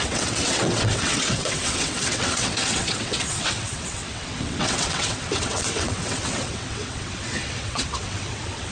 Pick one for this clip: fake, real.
fake